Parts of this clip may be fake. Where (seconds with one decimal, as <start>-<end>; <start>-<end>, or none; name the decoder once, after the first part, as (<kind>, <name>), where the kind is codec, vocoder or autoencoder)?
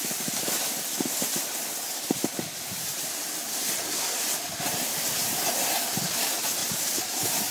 0.0-7.5 (vocoder, BigVGAN v2)